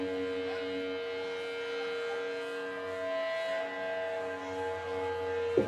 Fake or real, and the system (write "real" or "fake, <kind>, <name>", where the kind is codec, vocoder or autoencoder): real